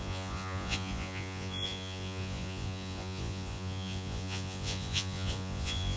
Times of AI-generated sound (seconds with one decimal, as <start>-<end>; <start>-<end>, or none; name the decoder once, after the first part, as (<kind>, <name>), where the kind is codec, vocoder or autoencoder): 0.0-6.0 (vocoder, Vocos)